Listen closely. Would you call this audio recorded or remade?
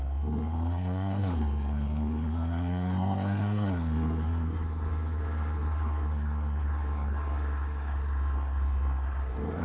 remade